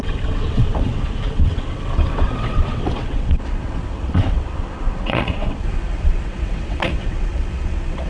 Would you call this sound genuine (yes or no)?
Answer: no